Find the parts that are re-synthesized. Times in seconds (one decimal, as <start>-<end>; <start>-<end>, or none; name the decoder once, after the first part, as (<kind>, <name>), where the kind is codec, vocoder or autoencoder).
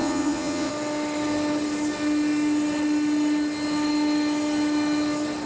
0.0-0.7 (vocoder, Vocos)